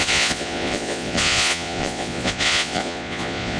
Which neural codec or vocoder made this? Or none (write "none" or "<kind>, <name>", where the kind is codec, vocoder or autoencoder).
vocoder, Vocos